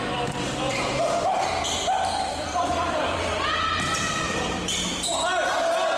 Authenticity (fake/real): fake